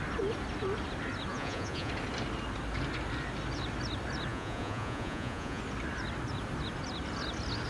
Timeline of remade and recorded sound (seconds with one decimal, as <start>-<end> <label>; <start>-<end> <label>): 0.0-1.3 recorded; 1.3-1.9 remade; 1.9-4.3 recorded; 4.3-5.6 remade; 5.6-7.7 recorded